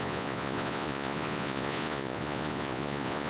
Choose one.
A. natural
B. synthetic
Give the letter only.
B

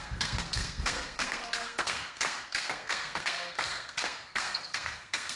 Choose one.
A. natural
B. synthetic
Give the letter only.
B